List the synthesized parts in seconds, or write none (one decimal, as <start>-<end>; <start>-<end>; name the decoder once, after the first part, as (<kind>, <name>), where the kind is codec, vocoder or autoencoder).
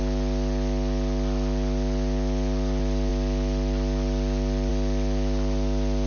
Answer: none